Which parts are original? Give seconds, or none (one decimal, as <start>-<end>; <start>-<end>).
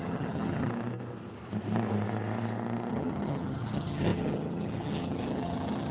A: 0.7-2.9